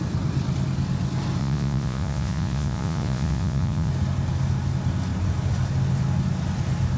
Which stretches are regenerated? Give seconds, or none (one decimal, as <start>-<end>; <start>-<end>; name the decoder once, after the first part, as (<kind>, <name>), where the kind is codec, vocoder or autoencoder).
1.4-3.9 (vocoder, Vocos)